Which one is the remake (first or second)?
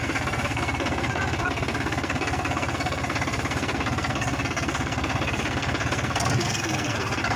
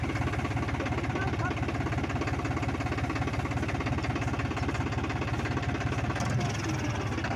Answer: first